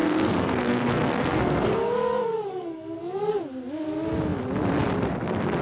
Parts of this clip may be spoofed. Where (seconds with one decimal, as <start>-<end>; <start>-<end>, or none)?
0.0-3.4